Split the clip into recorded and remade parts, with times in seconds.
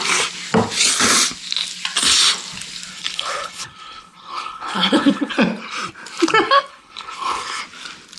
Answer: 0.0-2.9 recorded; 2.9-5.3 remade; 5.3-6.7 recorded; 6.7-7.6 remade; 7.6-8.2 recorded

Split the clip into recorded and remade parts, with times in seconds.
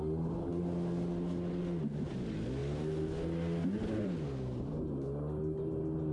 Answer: 0.0-6.1 recorded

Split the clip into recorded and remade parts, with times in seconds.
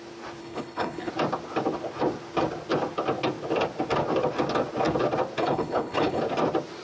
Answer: 0.0-0.4 recorded; 0.4-1.1 remade; 1.1-5.4 recorded; 5.4-6.2 remade; 6.2-6.8 recorded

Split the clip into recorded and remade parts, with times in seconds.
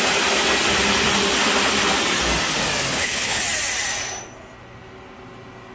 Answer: 0.0-2.9 recorded; 2.9-3.4 remade; 3.4-5.7 recorded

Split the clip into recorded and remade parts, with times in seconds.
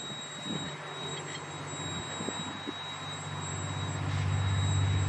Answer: 0.0-5.1 recorded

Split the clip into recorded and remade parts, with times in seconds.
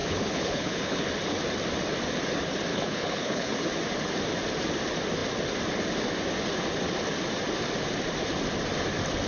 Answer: 0.0-1.1 remade; 1.1-2.7 recorded; 2.7-3.5 remade; 3.5-9.3 recorded